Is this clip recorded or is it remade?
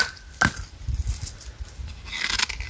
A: recorded